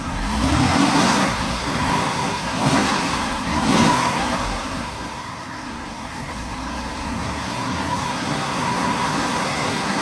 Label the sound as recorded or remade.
remade